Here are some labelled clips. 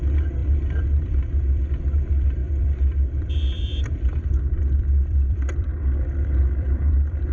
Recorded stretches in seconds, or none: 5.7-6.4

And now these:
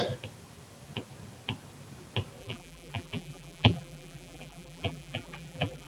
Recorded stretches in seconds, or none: 0.0-2.4

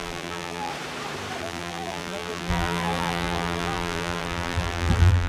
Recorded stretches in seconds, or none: 0.7-1.4